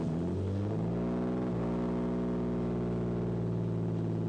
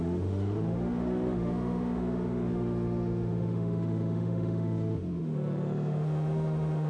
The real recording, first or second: first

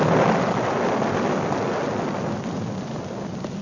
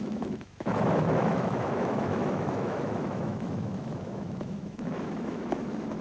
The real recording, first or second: first